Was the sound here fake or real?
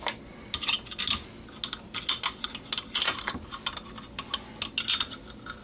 real